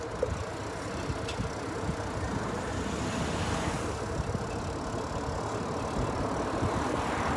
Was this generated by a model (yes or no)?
no